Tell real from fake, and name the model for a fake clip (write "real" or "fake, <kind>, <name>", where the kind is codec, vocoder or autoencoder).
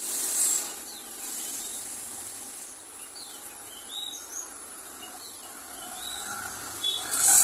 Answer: real